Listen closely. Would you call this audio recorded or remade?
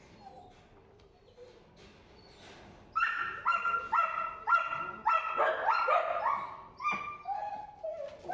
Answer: recorded